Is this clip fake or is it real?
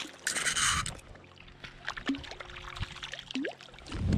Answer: real